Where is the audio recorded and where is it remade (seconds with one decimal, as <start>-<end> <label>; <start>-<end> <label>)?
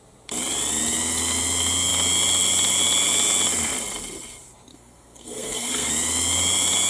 0.0-4.7 recorded; 4.7-5.9 remade; 5.9-6.9 recorded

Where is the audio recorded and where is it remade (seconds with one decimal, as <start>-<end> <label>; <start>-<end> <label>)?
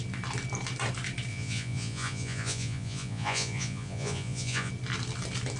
0.0-1.3 recorded; 1.3-4.7 remade; 4.7-5.6 recorded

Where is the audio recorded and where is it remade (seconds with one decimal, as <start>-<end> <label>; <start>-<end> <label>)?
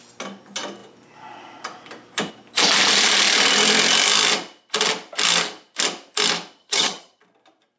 0.0-6.6 recorded; 6.6-7.2 remade; 7.2-7.8 recorded